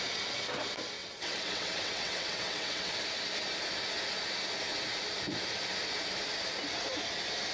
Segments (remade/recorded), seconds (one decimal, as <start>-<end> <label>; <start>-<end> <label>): 0.0-1.0 recorded; 1.0-2.9 remade; 2.9-7.5 recorded